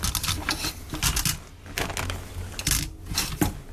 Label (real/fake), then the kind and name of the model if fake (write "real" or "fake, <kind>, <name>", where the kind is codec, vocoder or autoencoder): real